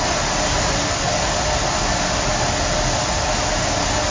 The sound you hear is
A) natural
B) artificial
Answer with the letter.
A